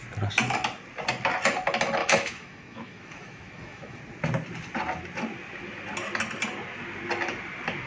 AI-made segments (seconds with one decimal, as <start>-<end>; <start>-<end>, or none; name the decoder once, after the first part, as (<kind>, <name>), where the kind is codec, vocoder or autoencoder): 2.0-4.0 (autoencoder, DAC-VAE)